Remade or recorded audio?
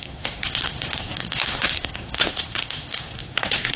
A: remade